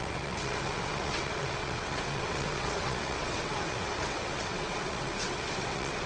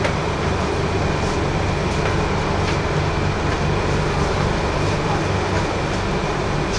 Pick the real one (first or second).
second